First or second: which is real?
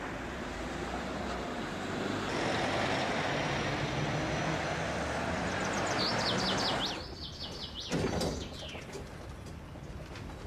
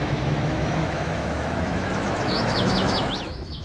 first